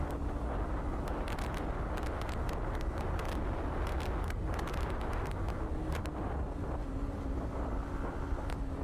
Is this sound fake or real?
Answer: real